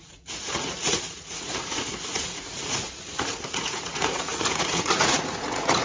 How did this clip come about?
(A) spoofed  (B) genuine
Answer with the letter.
A